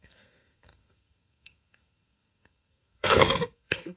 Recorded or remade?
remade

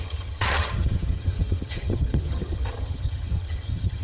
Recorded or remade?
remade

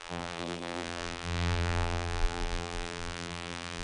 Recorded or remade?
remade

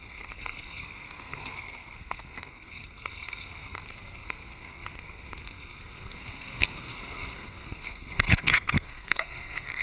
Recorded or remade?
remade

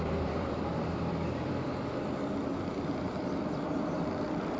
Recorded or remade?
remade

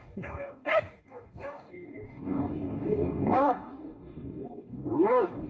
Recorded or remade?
remade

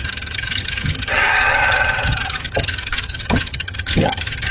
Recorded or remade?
remade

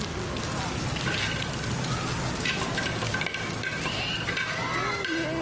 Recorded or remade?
recorded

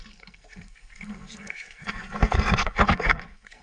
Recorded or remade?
remade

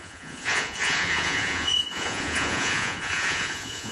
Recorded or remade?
remade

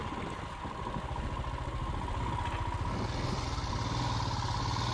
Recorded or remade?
recorded